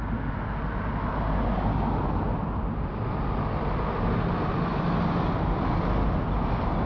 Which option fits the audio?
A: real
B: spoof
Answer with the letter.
A